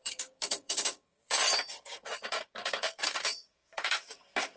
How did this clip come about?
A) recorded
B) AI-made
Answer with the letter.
B